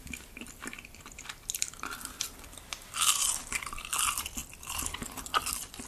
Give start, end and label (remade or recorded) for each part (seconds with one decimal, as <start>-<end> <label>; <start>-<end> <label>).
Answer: 0.0-5.9 remade